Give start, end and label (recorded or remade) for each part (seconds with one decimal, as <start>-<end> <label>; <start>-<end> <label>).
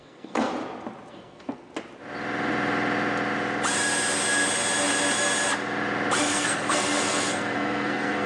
0.0-0.5 remade; 0.5-1.1 recorded; 1.1-1.7 remade; 1.7-6.2 recorded; 6.2-8.3 remade